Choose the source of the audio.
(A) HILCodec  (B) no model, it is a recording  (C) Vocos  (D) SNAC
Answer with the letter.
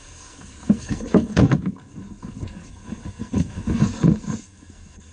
D